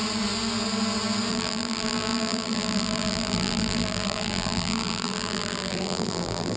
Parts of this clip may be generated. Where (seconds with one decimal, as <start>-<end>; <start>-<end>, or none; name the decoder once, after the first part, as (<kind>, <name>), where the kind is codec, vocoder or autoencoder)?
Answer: 1.3-6.6 (vocoder, BigVGAN v2)